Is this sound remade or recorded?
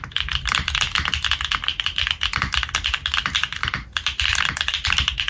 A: remade